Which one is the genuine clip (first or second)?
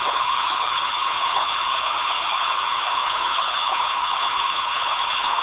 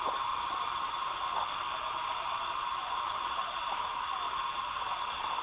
second